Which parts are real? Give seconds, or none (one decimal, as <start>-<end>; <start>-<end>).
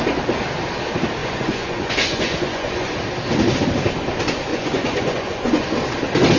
0.0-1.2; 2.9-4.5; 5.7-6.4